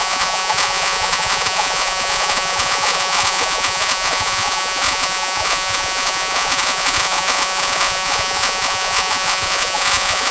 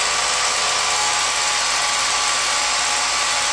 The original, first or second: second